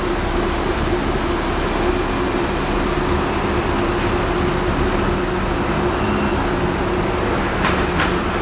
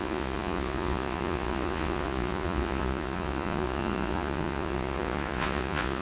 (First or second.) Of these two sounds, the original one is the first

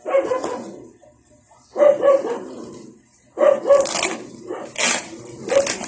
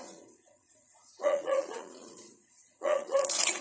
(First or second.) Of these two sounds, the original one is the first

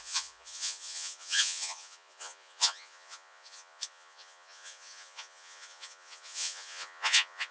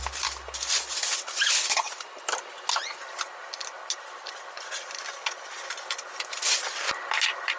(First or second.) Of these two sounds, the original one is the second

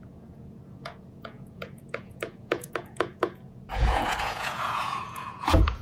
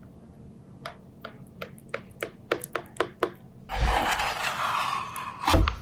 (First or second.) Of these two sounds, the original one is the second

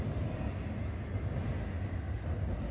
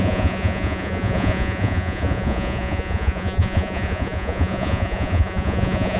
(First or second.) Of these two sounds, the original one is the first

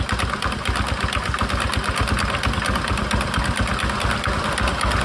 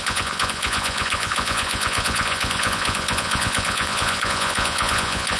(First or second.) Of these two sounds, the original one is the first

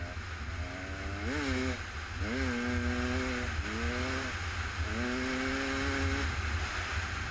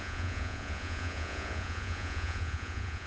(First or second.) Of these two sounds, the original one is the first